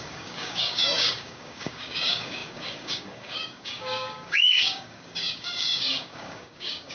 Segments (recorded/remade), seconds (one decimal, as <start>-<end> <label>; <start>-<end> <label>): 0.0-6.9 remade